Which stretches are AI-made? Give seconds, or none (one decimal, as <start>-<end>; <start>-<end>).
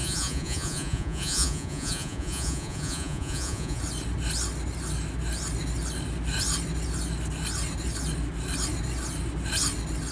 0.0-3.8